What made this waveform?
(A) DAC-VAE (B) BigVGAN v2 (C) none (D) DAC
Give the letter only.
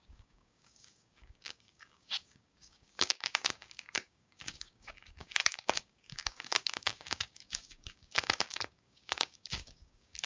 D